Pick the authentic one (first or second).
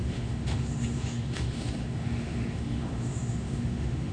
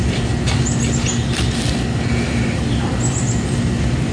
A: second